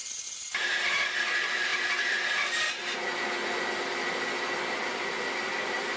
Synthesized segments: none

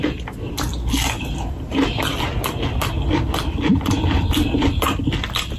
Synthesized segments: none

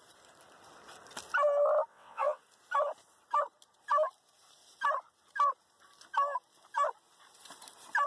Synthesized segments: 1.9-2.4 (vocoder, WaveNeXt)

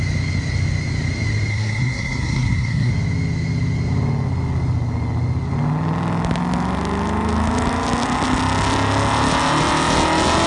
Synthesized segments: 1.5-2.9 (codec, SNAC)

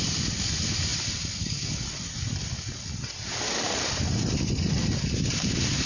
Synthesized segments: none

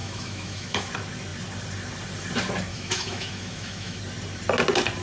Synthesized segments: 0.0-0.9 (autoencoder, DAC-VAE); 2.7-4.0

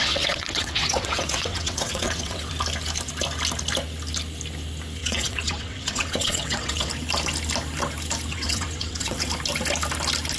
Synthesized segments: 0.0-2.5 (vocoder, WaveNeXt); 5.0-6.9; 8.3-9.3